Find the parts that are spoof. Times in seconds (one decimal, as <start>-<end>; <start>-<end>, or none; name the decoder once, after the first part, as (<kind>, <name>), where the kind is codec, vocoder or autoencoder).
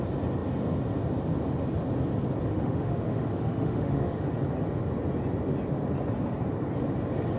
2.5-4.2 (autoencoder, DAC-VAE)